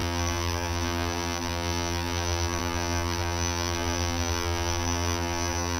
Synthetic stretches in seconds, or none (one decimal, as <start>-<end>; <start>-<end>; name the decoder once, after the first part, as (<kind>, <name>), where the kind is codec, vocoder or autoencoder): 0.0-5.8 (vocoder, BigVGAN v2)